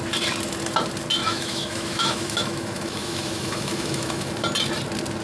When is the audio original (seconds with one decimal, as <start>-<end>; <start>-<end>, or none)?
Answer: 0.0-1.2; 4.3-5.2